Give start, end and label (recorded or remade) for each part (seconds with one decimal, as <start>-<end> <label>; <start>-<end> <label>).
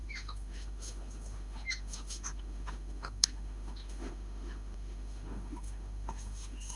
0.0-6.8 remade